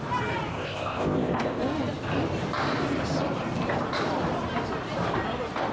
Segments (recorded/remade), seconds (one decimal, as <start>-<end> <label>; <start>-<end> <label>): 0.0-0.5 recorded; 0.5-1.6 remade; 1.6-5.7 recorded